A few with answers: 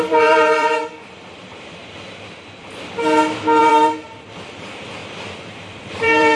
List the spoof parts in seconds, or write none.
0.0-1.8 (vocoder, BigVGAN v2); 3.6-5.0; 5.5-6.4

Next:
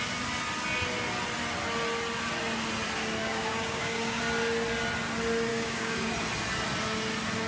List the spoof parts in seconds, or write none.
3.2-4.2 (codec, DAC); 5.5-6.1

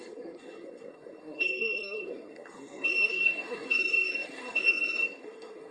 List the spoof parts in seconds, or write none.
0.0-5.7 (codec, SNAC)